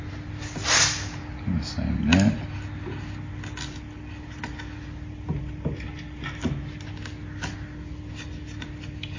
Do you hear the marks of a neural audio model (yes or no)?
no